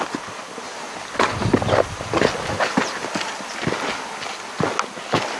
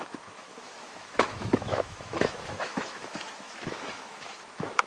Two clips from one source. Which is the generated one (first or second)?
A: second